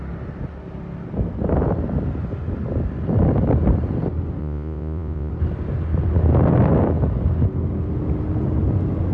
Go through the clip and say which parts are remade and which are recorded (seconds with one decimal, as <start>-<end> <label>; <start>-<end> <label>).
0.0-4.4 recorded; 4.4-5.3 remade; 5.3-9.1 recorded